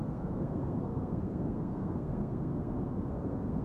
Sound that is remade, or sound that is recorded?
remade